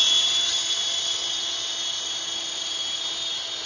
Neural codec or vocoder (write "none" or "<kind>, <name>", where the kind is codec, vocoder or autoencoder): none